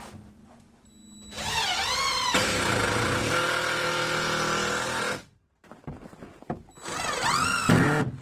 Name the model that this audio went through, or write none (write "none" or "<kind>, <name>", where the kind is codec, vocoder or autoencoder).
none